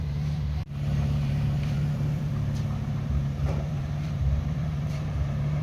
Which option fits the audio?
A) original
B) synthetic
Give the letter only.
B